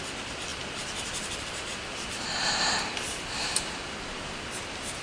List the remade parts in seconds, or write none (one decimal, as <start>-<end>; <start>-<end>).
0.5-3.5